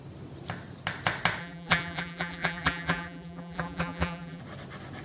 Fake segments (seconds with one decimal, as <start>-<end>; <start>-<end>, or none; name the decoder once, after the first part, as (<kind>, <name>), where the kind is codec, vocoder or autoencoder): 1.4-4.4 (vocoder, BigVGAN v2)